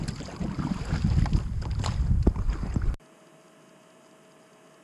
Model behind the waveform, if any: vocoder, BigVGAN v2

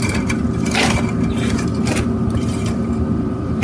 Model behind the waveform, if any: vocoder, BigVGAN v2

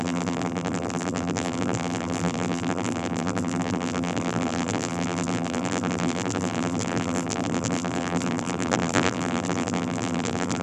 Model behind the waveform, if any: vocoder, BigVGAN v2